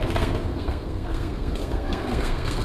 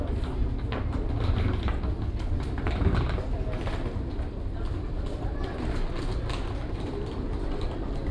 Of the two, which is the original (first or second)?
second